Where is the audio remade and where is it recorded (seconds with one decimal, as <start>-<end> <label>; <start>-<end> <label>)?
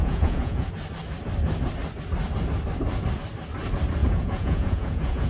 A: 0.0-0.7 remade; 0.7-4.0 recorded; 4.0-5.3 remade